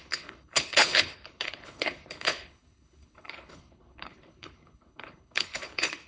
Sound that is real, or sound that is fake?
fake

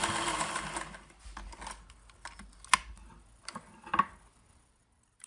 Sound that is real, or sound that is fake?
real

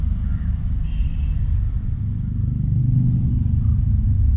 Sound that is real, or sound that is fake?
real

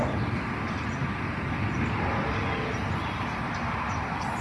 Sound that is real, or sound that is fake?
real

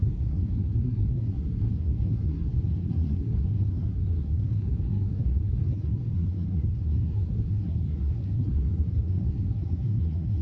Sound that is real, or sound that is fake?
fake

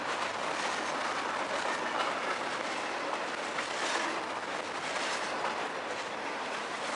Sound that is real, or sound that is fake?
real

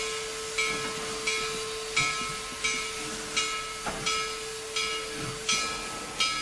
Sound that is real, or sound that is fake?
real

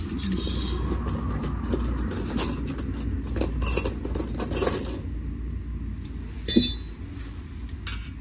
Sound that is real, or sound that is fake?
real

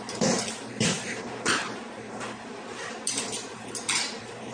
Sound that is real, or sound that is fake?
fake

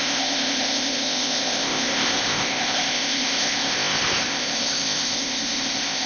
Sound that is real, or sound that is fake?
fake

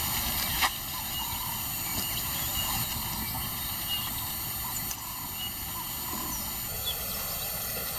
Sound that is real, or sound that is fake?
real